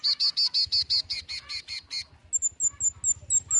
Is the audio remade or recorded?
recorded